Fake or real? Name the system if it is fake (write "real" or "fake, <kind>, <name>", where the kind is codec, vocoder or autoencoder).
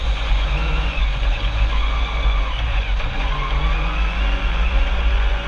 fake, vocoder, Vocos